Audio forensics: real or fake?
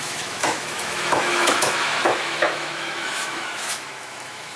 fake